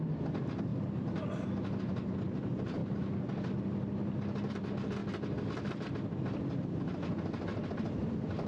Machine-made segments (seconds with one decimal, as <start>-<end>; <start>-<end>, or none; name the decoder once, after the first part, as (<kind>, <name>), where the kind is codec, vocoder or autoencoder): none